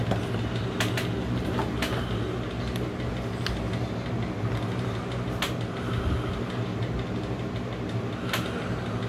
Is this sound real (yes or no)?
yes